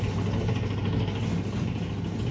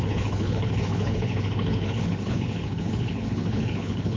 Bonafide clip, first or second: first